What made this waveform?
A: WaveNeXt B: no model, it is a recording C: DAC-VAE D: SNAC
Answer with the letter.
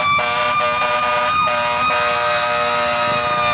B